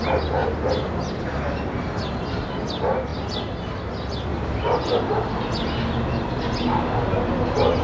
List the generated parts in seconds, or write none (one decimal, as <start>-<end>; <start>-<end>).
4.3-5.0